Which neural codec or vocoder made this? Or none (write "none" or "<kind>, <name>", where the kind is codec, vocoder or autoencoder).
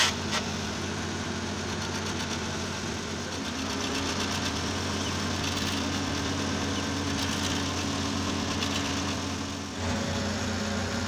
none